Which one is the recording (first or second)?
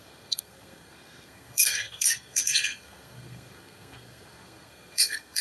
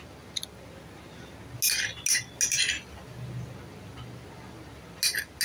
second